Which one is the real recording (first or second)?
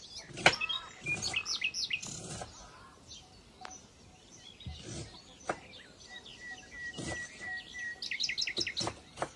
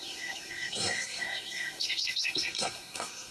first